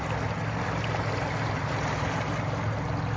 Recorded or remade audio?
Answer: recorded